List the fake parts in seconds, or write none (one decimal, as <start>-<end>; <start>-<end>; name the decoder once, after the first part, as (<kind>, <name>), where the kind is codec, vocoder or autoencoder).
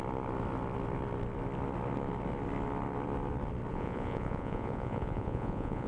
3.7-5.9 (vocoder, Vocos)